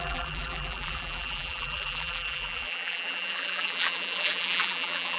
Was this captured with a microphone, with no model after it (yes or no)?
no